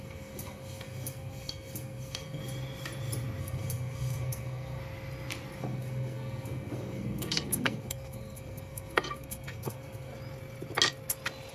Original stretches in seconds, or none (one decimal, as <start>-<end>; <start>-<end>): 2.4-3.4; 4.8-5.6; 10.1-11.5